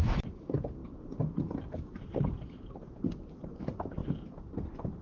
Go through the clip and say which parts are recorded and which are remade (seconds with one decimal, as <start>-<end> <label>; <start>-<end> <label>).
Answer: 0.0-4.0 remade; 4.0-5.0 recorded

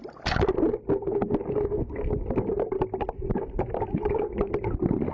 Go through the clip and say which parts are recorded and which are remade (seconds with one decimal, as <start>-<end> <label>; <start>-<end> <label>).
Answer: 0.0-5.1 recorded